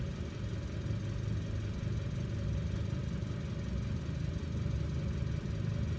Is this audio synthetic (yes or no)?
no